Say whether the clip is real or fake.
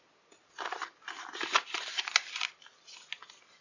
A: real